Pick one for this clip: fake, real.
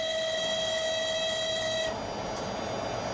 real